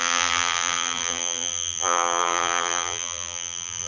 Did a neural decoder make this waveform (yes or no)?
yes